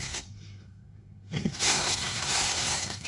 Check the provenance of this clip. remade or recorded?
remade